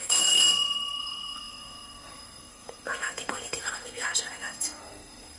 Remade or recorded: remade